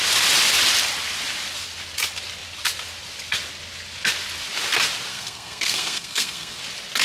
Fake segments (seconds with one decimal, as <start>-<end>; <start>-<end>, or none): 5.1-6.6